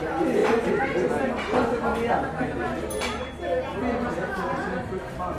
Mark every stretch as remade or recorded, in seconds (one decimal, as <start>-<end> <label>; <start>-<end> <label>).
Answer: 0.0-0.4 recorded; 0.4-1.3 remade; 1.3-5.4 recorded